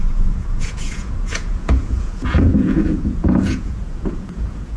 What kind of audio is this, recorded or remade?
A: remade